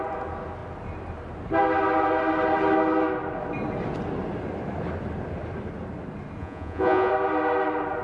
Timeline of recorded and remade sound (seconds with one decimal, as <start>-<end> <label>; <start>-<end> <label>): 0.0-6.4 recorded; 6.4-7.1 remade; 7.1-8.0 recorded